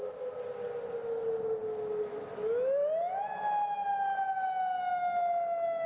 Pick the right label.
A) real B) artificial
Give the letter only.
A